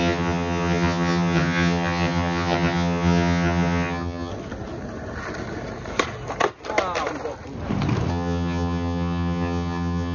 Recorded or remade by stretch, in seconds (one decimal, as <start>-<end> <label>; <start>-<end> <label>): 0.0-4.3 remade; 4.3-8.1 recorded; 8.1-10.1 remade